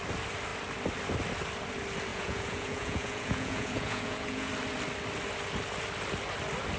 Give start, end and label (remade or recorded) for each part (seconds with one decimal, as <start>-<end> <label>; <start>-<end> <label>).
0.0-2.1 recorded; 2.1-4.5 remade; 4.5-6.8 recorded